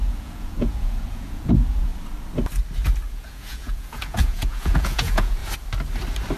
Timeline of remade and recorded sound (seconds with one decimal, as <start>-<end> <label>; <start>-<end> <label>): 0.0-1.9 remade; 1.9-3.1 recorded; 3.1-5.4 remade; 5.4-6.4 recorded